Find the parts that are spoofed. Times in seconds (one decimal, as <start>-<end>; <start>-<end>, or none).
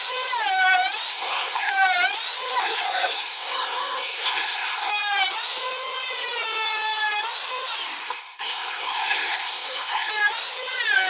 1.1-1.7; 2.6-4.9; 8.0-10.1